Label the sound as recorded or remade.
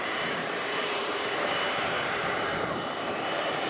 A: remade